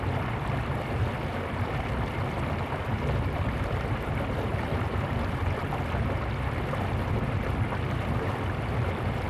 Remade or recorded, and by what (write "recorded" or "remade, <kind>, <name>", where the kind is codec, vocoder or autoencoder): recorded